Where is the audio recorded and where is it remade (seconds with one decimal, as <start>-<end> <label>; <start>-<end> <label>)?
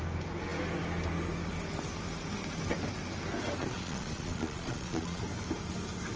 0.0-3.6 recorded; 3.6-5.2 remade; 5.2-6.2 recorded